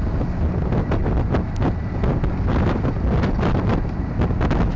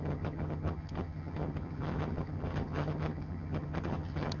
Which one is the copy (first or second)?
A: second